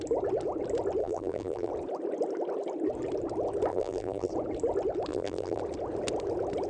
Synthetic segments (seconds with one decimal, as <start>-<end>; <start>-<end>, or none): 1.0-1.7; 3.7-4.3; 5.1-5.6